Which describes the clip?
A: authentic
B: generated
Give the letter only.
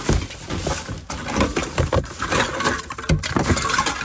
A